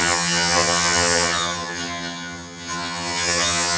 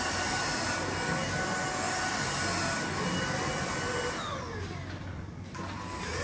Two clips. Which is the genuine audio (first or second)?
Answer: second